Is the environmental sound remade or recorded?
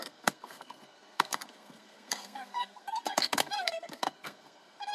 remade